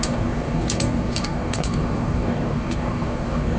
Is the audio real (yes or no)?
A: no